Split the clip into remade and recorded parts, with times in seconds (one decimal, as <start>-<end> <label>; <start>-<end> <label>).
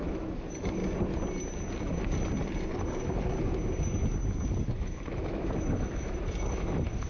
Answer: 0.0-0.8 remade; 0.8-4.6 recorded; 4.6-7.1 remade